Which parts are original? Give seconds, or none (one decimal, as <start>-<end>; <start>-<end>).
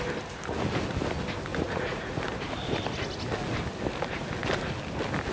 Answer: 0.0-1.5; 2.2-5.3